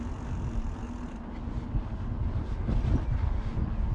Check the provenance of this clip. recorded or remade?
recorded